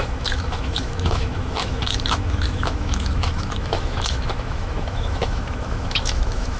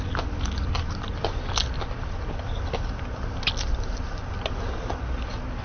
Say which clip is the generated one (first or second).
first